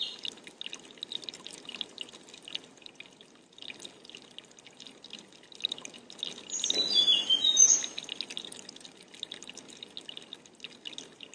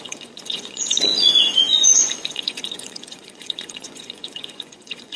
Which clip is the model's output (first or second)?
second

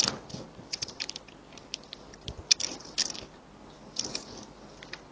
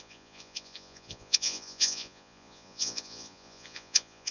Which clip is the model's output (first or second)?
second